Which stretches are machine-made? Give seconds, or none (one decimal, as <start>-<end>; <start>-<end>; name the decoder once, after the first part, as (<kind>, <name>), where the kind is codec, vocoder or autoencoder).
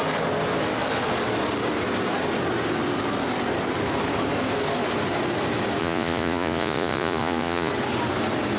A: 5.8-7.7 (vocoder, Vocos)